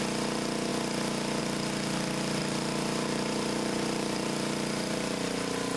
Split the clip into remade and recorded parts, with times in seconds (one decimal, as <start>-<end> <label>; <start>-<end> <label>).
0.0-2.4 recorded; 2.4-5.8 remade